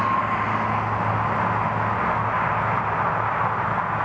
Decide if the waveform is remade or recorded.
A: recorded